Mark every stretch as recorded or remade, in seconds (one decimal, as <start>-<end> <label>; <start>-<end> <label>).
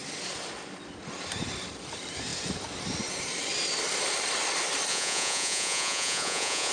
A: 0.0-4.9 recorded; 4.9-6.7 remade